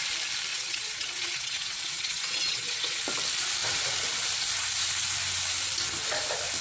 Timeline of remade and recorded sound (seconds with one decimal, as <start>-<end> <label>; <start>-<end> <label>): 0.0-0.5 recorded; 0.5-3.0 remade; 3.0-6.6 recorded